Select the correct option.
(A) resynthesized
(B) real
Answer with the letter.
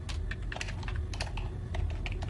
B